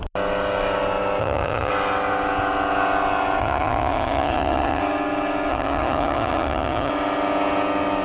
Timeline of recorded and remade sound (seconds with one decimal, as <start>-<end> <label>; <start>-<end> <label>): 0.0-1.2 recorded; 1.2-1.7 remade; 1.7-3.4 recorded; 3.4-4.8 remade; 4.8-5.5 recorded; 5.5-6.9 remade; 6.9-8.0 recorded